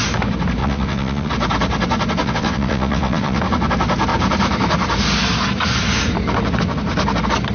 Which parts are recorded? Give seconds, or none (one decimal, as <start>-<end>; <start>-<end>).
0.0-0.6; 1.3-2.2; 3.4-7.5